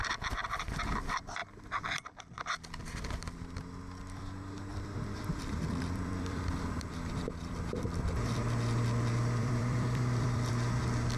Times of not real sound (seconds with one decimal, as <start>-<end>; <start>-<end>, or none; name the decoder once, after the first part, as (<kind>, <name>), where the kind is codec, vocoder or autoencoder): 4.7-8.4 (vocoder, BigVGAN v2); 9.4-10.5